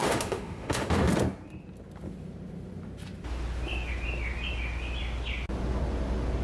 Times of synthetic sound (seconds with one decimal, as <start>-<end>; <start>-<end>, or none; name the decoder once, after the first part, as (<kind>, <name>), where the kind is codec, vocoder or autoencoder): 0.0-1.1 (autoencoder, DAC-VAE)